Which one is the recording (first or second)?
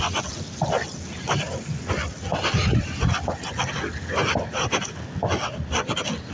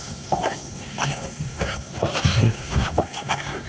first